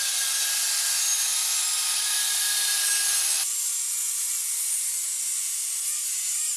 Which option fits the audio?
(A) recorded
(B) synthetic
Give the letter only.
A